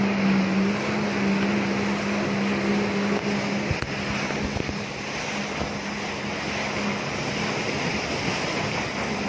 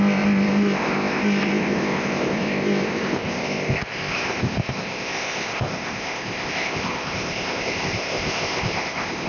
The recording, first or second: first